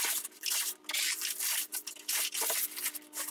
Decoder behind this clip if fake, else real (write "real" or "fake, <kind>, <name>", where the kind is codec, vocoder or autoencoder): real